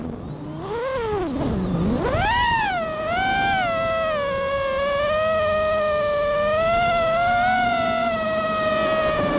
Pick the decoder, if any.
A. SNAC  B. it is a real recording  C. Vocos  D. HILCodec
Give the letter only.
B